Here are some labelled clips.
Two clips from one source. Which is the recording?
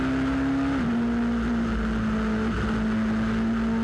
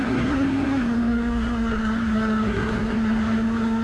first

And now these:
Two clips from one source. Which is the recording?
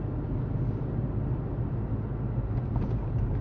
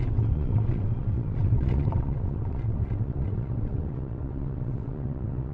first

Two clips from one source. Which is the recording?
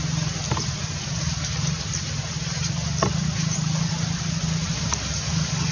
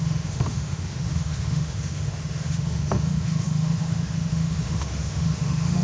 first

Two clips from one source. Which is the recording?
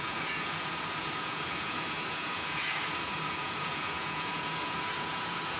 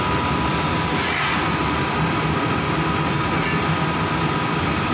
second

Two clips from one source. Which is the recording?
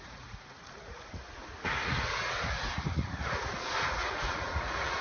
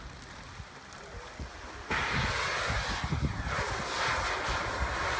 second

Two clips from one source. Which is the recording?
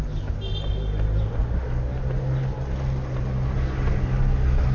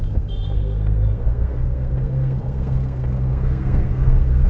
first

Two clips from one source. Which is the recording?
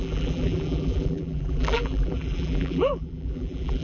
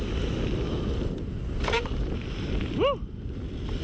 second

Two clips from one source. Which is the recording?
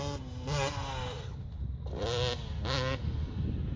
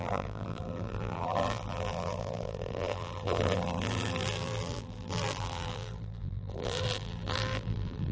first